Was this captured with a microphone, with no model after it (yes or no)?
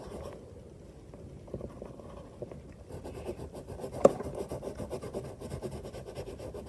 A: yes